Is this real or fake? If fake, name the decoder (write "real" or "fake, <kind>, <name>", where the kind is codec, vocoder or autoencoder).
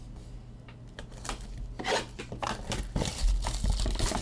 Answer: real